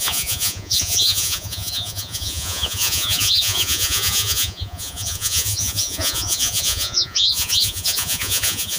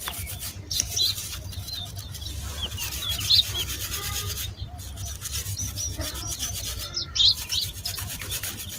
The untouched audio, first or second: second